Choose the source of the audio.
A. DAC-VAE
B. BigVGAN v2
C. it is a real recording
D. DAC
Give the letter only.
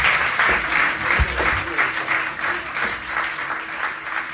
B